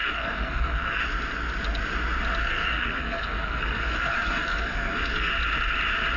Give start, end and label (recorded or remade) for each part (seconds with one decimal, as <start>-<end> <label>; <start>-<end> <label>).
0.0-1.0 remade; 1.0-2.4 recorded; 2.4-5.3 remade; 5.3-6.2 recorded